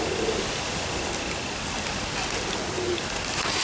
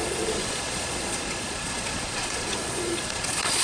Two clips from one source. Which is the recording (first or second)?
first